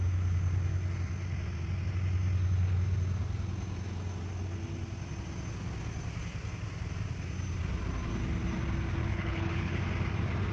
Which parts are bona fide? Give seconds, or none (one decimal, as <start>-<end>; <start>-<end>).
0.0-9.0; 9.8-10.5